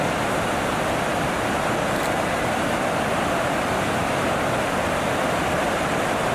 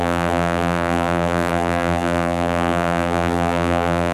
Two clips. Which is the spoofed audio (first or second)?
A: second